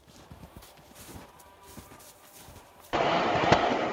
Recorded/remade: remade